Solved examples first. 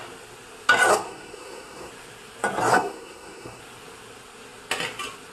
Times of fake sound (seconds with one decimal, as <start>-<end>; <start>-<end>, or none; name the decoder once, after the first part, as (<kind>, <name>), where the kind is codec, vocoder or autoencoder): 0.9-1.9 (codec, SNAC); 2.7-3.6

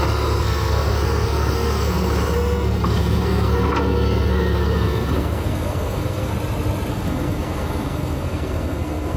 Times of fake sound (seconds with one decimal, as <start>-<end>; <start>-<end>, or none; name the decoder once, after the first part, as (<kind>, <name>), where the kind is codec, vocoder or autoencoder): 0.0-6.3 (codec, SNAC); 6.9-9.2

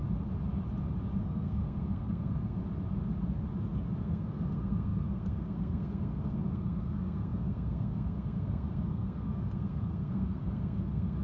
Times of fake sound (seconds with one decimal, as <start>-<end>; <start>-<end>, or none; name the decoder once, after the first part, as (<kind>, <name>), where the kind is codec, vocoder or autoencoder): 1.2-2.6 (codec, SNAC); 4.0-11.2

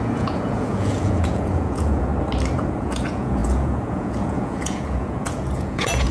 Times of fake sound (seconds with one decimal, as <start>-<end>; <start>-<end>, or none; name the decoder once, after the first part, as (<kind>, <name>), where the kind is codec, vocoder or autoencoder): 0.0-2.1 (vocoder, Vocos); 2.7-6.1

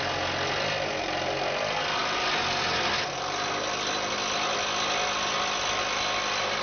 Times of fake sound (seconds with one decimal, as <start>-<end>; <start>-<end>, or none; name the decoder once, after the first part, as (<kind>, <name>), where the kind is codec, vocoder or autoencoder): none

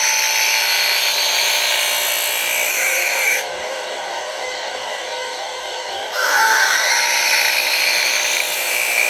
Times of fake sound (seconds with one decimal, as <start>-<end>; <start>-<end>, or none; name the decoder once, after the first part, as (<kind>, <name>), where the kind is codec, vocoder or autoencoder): 2.7-6.9 (codec, DAC)

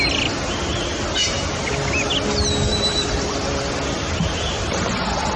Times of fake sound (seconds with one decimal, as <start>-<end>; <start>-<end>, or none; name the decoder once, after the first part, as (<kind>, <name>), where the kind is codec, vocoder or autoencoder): 2.7-3.7 (vocoder, BigVGAN v2)